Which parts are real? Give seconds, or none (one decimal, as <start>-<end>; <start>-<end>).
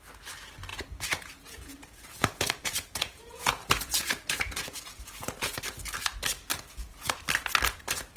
0.0-0.7; 5.6-6.5; 7.2-8.2